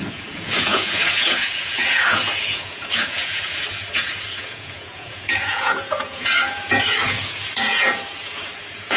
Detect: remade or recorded remade